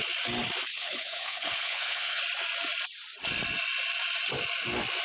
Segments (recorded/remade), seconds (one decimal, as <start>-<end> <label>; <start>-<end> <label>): 0.0-0.7 recorded; 0.7-2.2 remade; 2.2-5.0 recorded